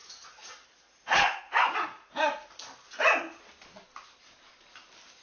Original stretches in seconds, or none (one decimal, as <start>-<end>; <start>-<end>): 2.5-5.2